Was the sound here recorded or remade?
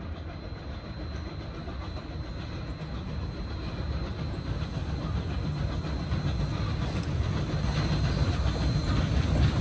recorded